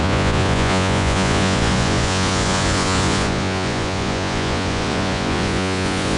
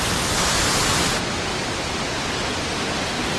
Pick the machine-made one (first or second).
first